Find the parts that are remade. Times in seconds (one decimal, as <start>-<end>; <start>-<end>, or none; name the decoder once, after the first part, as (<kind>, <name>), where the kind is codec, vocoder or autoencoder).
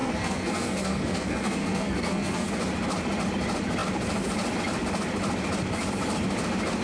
0.0-2.5 (codec, SNAC)